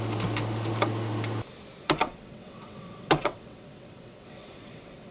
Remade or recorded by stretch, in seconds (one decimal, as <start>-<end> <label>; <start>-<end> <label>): 0.0-1.8 recorded; 1.8-5.1 remade